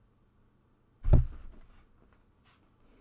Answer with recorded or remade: recorded